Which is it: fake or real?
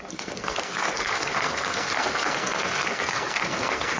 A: fake